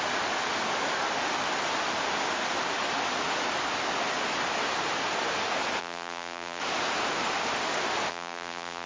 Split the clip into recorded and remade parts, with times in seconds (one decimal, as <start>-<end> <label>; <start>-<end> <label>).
0.0-5.8 recorded; 5.8-6.6 remade; 6.6-8.1 recorded; 8.1-8.9 remade